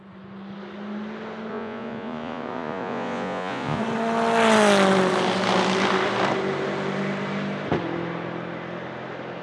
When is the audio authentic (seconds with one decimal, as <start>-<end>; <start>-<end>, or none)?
0.0-1.5; 3.8-9.4